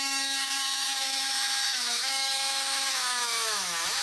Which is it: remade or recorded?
remade